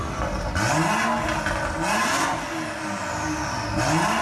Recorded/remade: recorded